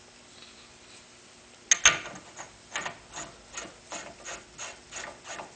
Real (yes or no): yes